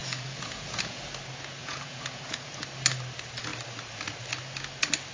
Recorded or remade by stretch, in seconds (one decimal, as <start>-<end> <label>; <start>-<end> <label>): 0.0-1.0 remade; 1.0-1.6 recorded; 1.6-2.5 remade; 2.5-5.1 recorded